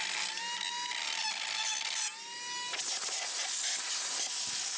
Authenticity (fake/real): real